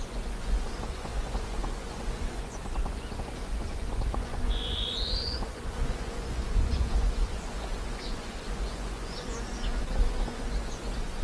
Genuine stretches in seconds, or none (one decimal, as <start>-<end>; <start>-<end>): none